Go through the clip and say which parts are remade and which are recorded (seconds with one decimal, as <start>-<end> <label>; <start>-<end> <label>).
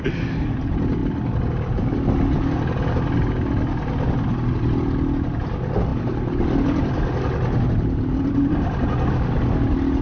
0.0-10.0 recorded